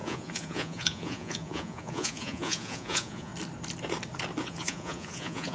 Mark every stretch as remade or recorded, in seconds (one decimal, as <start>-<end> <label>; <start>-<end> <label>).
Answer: 0.0-3.3 remade; 3.3-4.4 recorded; 4.4-5.5 remade